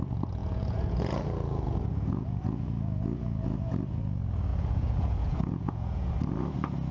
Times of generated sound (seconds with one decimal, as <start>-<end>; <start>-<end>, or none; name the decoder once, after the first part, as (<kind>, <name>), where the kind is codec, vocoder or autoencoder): 0.4-4.0 (vocoder, Vocos); 4.5-6.1